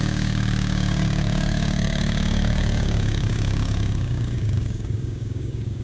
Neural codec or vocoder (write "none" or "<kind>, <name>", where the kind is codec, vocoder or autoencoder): codec, DAC